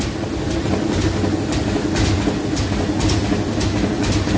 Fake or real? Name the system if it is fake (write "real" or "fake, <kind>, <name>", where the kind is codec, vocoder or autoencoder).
real